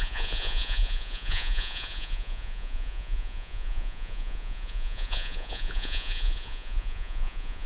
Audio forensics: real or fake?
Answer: fake